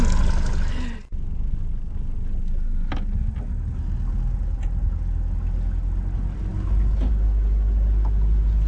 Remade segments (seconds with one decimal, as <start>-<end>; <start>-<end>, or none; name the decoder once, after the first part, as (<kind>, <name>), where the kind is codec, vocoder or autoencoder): none